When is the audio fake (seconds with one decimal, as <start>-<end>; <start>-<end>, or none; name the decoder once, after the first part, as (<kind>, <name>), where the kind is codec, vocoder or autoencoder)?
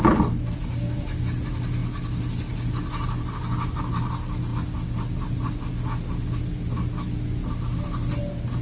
none